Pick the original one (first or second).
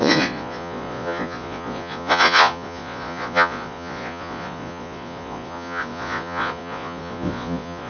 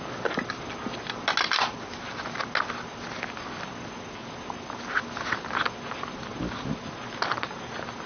second